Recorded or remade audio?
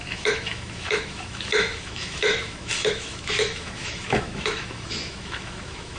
remade